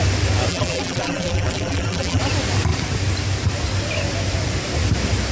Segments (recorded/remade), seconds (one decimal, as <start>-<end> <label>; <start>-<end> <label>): 0.0-0.5 recorded; 0.5-2.2 remade; 2.2-5.3 recorded